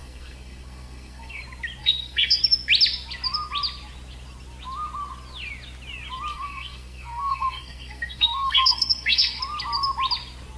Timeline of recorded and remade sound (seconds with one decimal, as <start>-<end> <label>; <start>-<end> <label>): 0.0-1.4 remade; 1.4-1.8 recorded; 1.8-2.4 remade; 2.4-6.3 recorded; 6.3-9.4 remade; 9.4-10.6 recorded